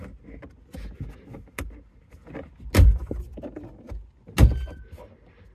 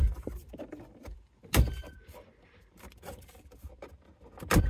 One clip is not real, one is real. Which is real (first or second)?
first